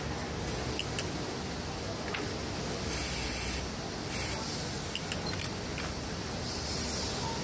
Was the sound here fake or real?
real